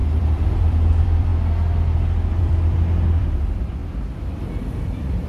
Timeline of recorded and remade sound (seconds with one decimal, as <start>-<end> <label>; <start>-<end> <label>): 0.0-1.3 remade; 1.3-2.4 recorded; 2.4-3.8 remade; 3.8-4.6 recorded; 4.6-5.3 remade